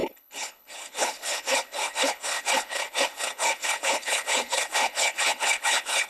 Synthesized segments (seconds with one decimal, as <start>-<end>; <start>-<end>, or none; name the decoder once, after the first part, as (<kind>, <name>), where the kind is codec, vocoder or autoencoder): 0.0-6.1 (codec, HILCodec)